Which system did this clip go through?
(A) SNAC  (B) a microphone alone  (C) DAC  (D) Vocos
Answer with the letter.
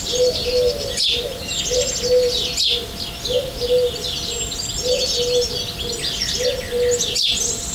B